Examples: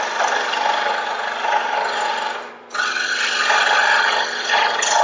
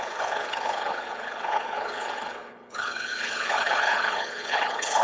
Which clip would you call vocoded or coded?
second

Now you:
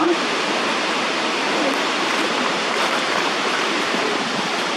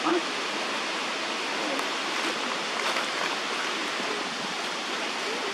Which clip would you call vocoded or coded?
first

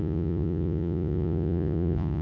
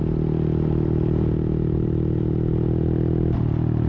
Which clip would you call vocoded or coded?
first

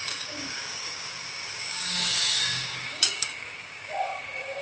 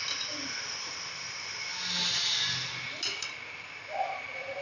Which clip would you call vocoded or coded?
first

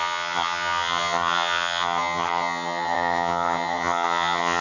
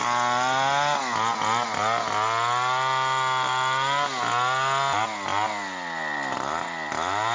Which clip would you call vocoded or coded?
first